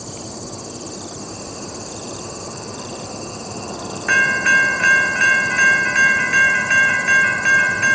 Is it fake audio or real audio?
fake